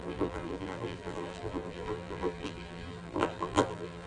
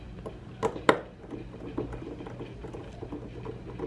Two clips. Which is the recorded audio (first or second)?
second